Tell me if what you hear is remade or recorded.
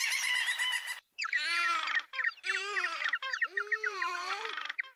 remade